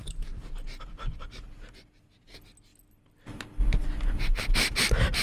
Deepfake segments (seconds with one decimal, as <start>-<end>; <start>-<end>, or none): none